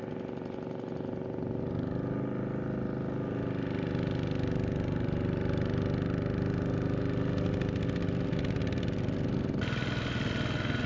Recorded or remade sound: recorded